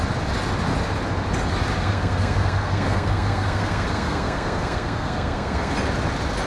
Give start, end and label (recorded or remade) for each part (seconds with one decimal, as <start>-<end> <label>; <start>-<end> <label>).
0.0-1.8 recorded; 1.8-5.7 remade; 5.7-6.5 recorded